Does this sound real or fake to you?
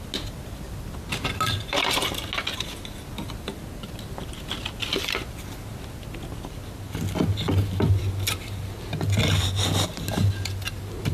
real